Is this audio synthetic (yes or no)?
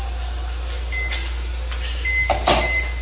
no